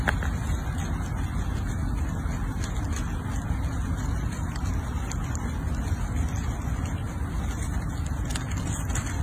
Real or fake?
real